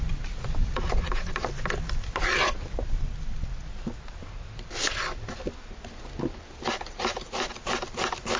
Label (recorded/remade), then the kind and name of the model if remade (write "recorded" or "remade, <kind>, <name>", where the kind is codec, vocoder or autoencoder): recorded